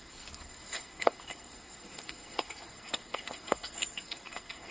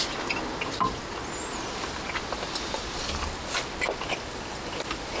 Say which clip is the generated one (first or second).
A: first